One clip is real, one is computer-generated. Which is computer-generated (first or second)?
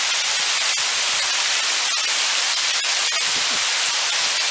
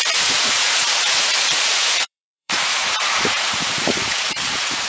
second